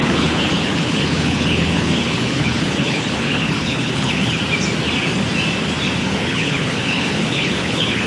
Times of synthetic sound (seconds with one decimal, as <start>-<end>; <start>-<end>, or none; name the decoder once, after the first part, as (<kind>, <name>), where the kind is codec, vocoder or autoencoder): 0.0-4.4 (codec, HILCodec); 6.0-8.1